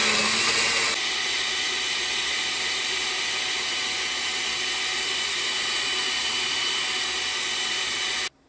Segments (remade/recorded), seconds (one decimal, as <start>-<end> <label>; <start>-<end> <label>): 0.0-8.5 recorded